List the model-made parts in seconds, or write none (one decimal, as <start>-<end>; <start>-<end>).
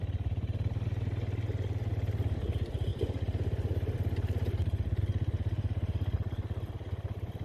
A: 2.9-5.0